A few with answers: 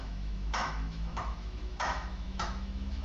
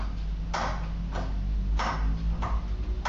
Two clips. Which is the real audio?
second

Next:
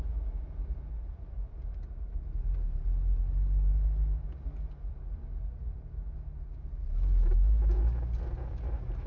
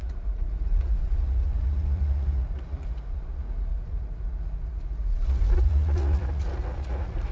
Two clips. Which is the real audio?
first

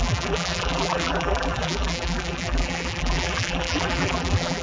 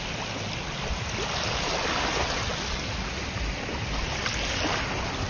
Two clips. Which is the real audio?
second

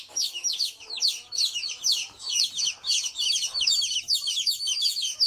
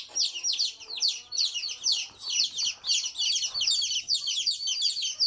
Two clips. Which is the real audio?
second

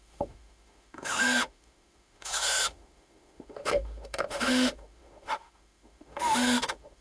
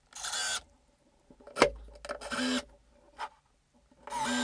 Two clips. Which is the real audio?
second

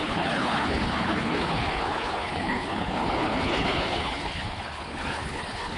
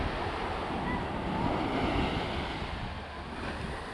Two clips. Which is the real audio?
second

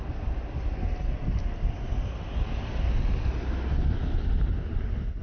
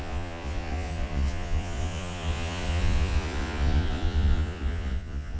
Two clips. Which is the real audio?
first